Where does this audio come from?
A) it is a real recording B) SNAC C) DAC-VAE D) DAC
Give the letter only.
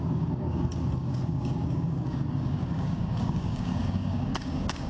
D